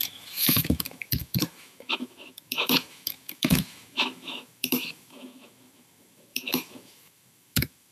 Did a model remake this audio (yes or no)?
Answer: yes